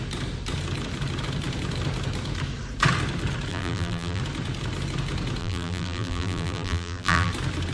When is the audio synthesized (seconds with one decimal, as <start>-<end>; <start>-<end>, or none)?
3.5-4.2; 5.4-7.3